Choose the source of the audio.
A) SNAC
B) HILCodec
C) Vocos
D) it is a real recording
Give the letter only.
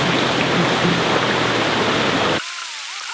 D